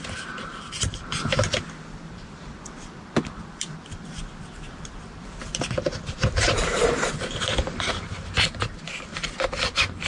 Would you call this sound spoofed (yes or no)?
yes